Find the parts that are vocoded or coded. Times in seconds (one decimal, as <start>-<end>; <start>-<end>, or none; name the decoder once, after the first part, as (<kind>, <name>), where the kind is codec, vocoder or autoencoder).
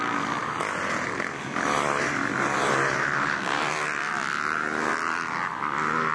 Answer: none